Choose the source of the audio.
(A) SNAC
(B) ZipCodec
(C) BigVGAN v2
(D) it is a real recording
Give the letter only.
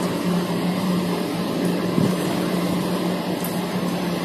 D